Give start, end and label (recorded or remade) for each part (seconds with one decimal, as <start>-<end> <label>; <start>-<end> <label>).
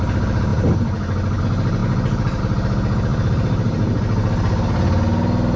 0.0-0.5 recorded; 0.5-1.4 remade; 1.4-1.8 recorded; 1.8-2.4 remade; 2.4-3.1 recorded; 3.1-4.0 remade; 4.0-5.6 recorded